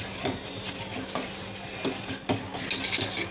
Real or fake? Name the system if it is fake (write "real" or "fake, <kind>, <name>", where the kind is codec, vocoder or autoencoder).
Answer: real